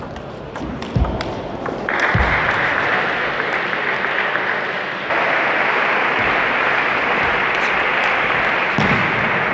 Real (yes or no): yes